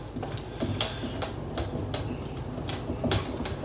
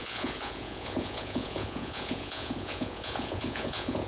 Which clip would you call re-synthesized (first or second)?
second